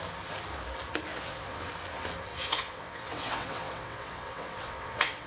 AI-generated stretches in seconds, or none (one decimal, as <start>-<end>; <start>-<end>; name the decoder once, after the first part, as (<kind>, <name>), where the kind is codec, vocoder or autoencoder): 1.1-1.7 (vocoder, WaveNeXt); 2.3-5.3